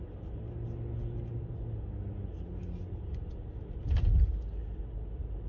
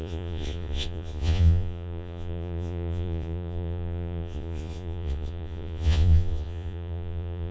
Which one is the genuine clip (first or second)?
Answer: first